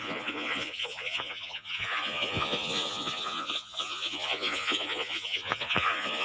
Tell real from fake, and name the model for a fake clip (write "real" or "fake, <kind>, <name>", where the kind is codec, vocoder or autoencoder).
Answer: fake, vocoder, Vocos